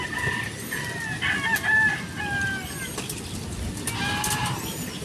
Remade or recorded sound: recorded